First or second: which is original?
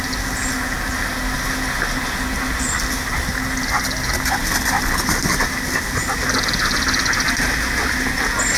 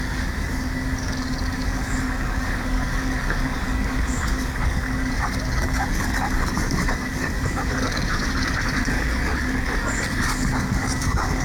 first